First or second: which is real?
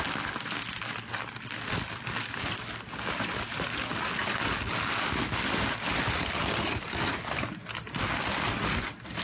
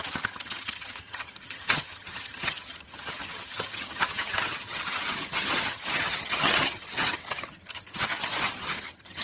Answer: first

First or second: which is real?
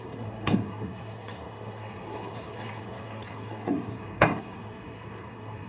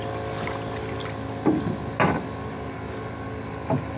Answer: second